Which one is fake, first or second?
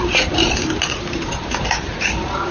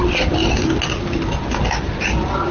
first